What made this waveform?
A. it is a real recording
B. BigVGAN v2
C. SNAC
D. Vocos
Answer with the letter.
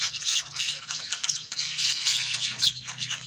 C